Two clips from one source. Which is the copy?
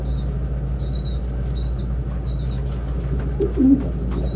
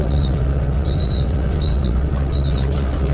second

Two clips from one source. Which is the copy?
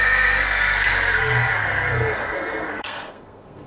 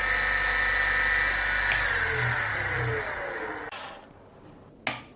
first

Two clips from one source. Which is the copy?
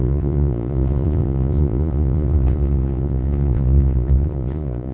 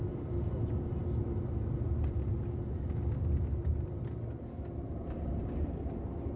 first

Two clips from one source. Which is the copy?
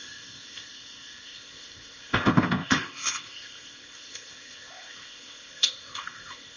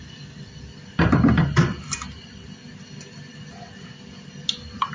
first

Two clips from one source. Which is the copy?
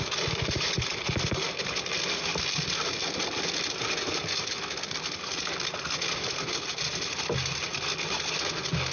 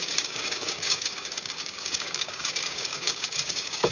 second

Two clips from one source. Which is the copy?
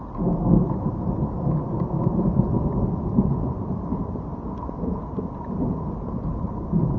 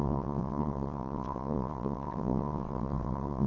second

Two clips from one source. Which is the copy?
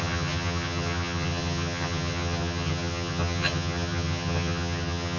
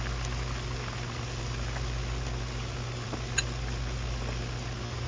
first